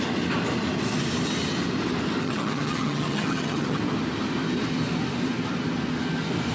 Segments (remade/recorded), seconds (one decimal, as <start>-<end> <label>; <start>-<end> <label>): 0.0-2.2 recorded; 2.2-3.8 remade; 3.8-6.5 recorded